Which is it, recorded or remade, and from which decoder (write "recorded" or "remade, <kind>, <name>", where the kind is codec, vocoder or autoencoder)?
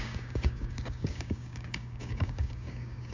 remade, codec, DAC